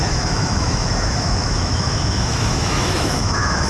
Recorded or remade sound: remade